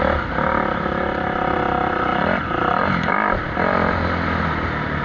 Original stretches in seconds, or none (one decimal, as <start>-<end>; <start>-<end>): 0.0-5.0